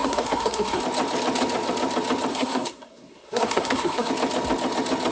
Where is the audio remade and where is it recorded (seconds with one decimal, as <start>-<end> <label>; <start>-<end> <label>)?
0.0-0.8 remade; 0.8-2.3 recorded; 2.3-4.1 remade; 4.1-5.1 recorded